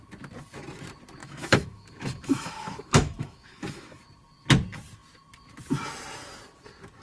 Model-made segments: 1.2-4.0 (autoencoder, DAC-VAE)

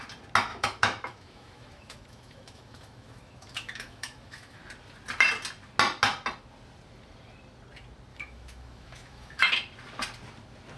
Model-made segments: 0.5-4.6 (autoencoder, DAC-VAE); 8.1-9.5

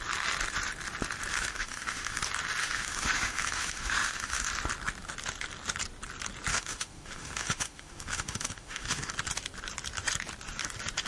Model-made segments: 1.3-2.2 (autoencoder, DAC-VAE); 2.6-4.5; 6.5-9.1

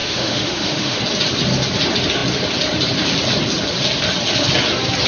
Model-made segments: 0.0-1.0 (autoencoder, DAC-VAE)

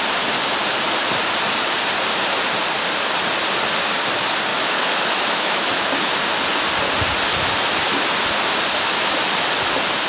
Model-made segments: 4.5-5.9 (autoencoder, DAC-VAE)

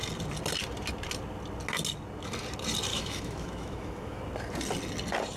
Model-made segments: 2.9-4.2 (autoencoder, DAC-VAE)